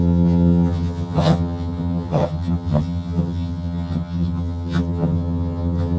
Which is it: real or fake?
fake